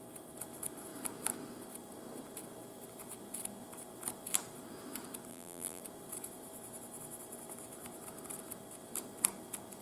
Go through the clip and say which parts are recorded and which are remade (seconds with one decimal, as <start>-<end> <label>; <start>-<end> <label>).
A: 0.0-5.3 recorded; 5.3-5.8 remade; 5.8-9.8 recorded